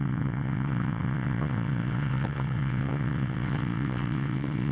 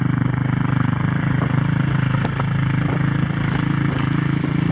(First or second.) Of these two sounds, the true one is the second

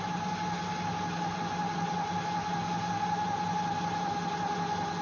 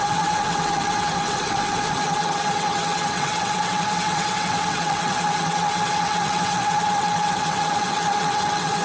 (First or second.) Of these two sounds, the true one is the first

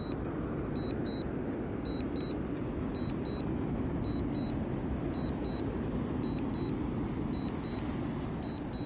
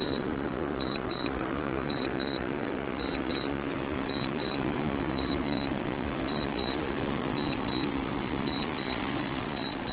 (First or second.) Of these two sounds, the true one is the first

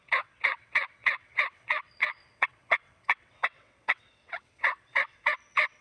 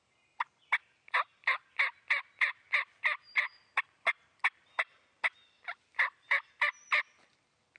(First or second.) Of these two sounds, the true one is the second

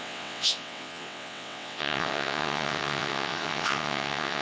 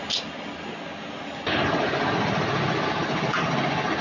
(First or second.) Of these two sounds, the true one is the second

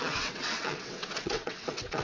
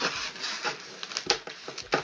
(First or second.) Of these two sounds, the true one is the second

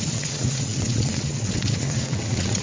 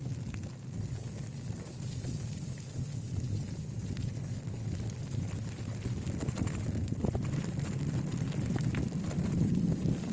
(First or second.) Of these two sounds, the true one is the second